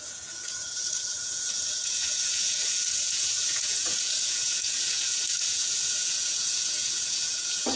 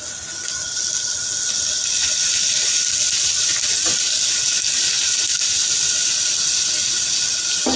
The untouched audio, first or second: second